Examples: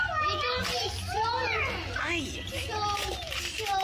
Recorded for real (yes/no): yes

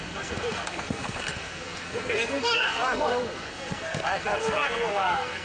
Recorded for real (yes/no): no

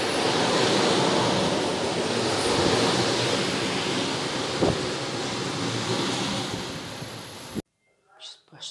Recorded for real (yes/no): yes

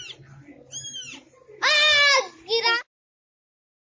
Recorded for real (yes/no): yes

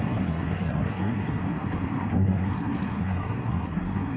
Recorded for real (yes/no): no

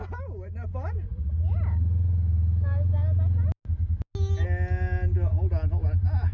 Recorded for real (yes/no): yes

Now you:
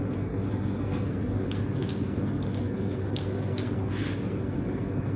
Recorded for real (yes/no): no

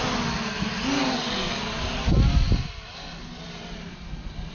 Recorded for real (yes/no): yes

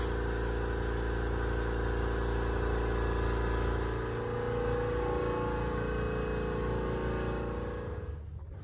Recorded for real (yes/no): yes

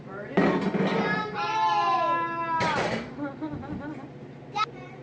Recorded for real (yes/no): yes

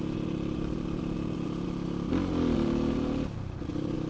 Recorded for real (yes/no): yes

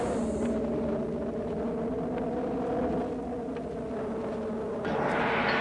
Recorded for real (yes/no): yes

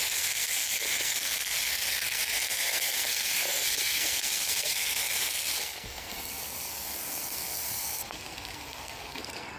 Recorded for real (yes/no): no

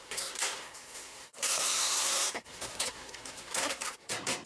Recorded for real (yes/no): no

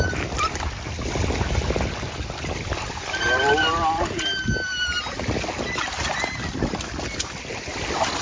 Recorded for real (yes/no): yes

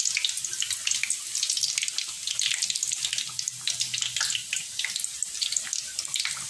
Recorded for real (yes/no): yes